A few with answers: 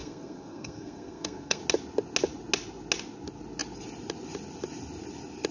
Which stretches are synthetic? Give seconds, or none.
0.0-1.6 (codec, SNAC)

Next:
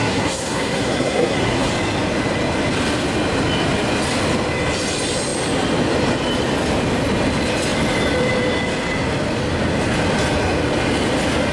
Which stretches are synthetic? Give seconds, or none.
0.0-1.7 (codec, SNAC)